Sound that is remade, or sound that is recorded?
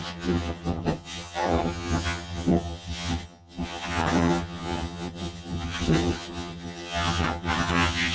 remade